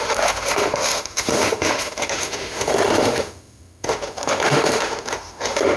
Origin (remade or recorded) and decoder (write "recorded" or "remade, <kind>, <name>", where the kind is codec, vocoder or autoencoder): remade, autoencoder, DAC-VAE